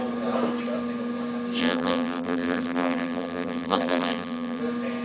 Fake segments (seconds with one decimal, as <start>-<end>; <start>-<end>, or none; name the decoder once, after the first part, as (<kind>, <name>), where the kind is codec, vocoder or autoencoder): 1.6-4.6 (vocoder, BigVGAN v2)